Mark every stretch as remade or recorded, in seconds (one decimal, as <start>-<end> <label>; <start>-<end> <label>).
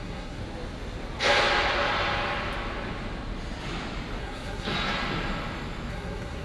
0.0-0.4 remade; 0.4-4.2 recorded; 4.2-4.7 remade; 4.7-5.9 recorded; 5.9-6.4 remade